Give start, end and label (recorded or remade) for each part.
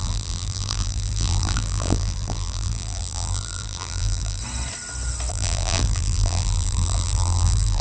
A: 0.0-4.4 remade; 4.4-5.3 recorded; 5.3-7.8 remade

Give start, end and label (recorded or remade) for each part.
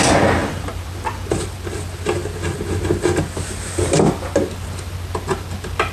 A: 0.0-0.4 recorded; 0.4-1.5 remade; 1.5-5.9 recorded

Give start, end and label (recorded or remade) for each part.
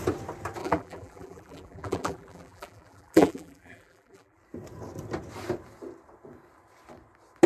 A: 0.0-0.6 recorded; 0.6-4.4 remade; 4.4-7.5 recorded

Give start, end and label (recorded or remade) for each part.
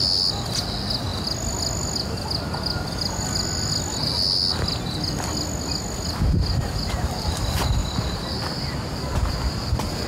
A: 0.0-10.1 recorded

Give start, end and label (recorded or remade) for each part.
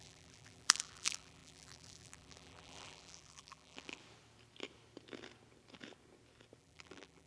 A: 0.0-4.0 remade; 4.0-6.6 recorded; 6.6-7.3 remade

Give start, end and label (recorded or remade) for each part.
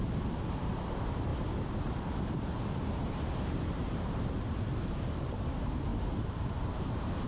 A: 0.0-1.3 remade; 1.3-1.8 recorded; 1.8-7.3 remade